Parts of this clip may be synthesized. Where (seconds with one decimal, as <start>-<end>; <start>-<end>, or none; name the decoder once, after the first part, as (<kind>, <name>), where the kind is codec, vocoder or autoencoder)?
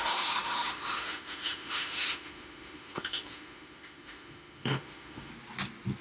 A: 0.0-5.3 (autoencoder, DAC-VAE)